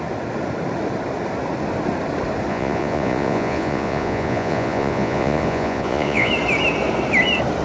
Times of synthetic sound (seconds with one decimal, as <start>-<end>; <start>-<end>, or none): 2.5-6.3